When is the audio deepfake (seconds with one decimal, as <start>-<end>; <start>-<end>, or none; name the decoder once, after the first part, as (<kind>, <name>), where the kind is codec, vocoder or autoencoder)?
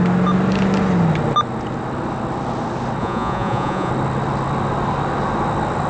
3.0-3.9 (vocoder, Vocos)